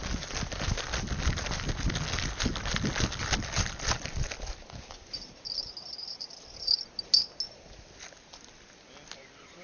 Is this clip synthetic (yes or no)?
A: no